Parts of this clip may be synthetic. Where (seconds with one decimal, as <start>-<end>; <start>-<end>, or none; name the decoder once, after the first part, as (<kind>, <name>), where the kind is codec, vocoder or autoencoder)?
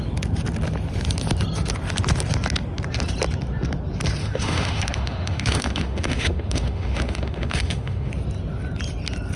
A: 4.2-8.1 (autoencoder, DAC-VAE)